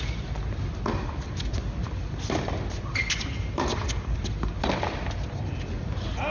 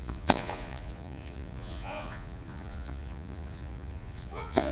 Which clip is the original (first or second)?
first